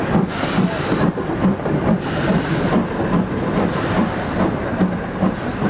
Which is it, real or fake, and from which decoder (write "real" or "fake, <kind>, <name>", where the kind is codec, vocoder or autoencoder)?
real